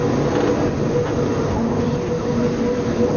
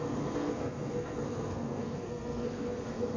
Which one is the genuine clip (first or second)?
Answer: first